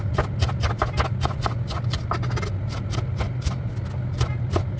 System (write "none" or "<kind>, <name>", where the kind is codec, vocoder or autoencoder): none